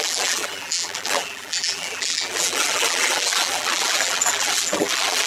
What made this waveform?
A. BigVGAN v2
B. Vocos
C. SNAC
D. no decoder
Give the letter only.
A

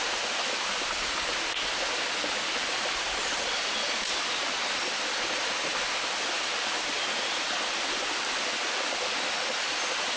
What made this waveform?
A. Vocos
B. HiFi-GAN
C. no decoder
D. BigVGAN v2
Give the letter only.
C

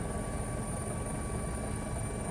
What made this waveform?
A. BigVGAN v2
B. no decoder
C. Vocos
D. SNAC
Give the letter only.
B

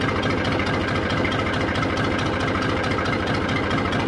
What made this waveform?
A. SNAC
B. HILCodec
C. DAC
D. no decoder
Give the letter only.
D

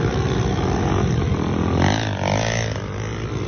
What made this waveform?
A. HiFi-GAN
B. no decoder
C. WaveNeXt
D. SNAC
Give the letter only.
B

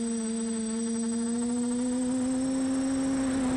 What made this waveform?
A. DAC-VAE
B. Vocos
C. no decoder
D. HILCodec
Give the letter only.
C